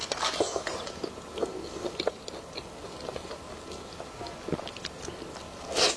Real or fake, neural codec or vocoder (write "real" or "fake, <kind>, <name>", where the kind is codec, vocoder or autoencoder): real